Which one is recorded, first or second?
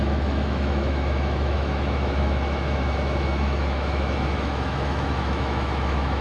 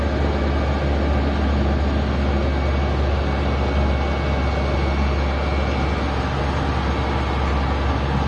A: second